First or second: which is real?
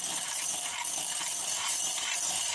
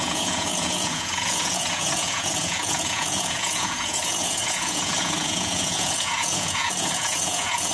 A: first